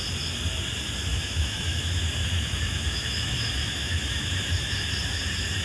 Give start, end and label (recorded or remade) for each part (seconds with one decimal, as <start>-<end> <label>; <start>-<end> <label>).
0.0-1.1 recorded; 1.1-4.5 remade; 4.5-5.6 recorded